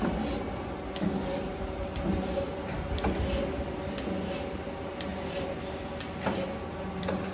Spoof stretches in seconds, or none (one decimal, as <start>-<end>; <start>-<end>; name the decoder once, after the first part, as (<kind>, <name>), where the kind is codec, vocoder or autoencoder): none